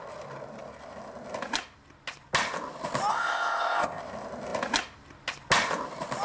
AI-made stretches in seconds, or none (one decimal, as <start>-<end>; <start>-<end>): 3.1-4.0

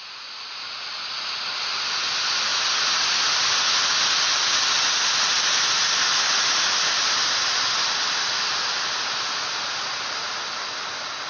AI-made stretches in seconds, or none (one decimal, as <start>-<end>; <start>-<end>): none

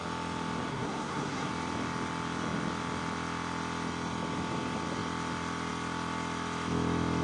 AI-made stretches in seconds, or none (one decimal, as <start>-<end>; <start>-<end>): 0.7-1.5

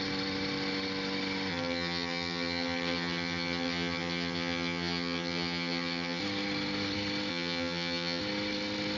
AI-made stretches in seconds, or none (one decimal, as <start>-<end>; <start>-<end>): 1.5-6.2; 7.3-8.2

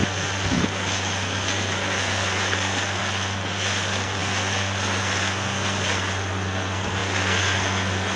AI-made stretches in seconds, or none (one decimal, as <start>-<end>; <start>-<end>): 0.0-8.2

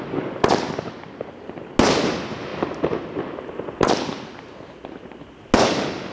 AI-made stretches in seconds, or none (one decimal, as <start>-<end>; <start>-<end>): none

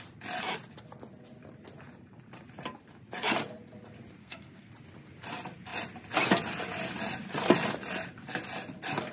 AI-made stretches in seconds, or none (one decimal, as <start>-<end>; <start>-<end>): 4.2-4.7

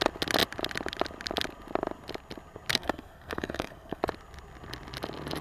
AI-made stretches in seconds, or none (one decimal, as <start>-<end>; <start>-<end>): 2.7-4.0